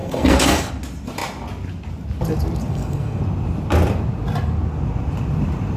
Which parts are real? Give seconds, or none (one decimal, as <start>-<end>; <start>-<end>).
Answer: 0.7-2.7; 3.2-5.8